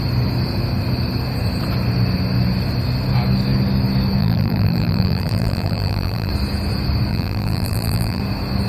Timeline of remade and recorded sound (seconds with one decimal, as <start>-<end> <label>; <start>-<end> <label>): 0.0-4.2 recorded; 4.2-6.3 remade; 6.3-7.1 recorded; 7.1-8.2 remade; 8.2-8.7 recorded